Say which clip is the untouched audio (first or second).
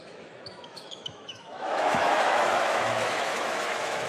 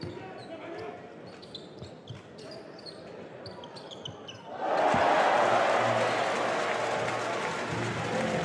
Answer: second